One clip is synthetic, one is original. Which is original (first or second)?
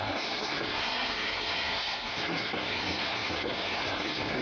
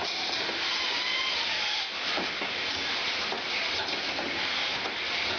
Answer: second